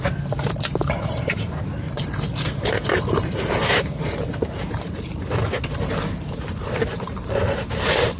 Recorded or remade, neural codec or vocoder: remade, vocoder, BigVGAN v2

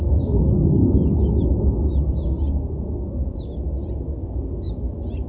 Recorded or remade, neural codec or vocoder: recorded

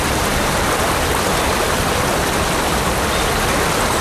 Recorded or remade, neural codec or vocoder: recorded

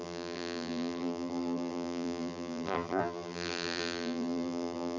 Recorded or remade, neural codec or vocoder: remade, vocoder, BigVGAN v2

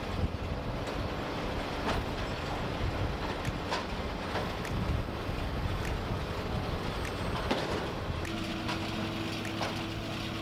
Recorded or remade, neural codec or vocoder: recorded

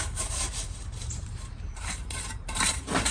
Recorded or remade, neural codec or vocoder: remade, vocoder, BigVGAN v2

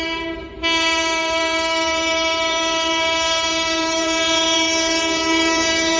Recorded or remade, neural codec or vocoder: remade, vocoder, BigVGAN v2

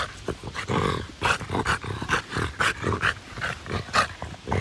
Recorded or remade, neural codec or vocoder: remade, vocoder, BigVGAN v2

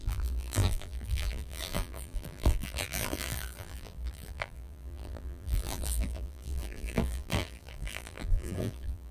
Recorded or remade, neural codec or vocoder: remade, vocoder, BigVGAN v2